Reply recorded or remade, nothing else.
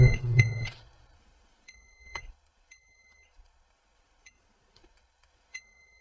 remade